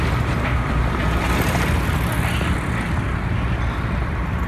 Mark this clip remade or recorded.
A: recorded